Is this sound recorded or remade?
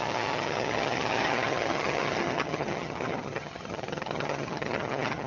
remade